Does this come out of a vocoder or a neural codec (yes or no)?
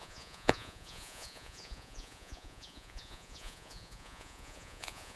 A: yes